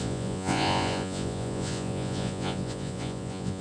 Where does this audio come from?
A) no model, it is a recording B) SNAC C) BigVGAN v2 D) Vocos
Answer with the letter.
D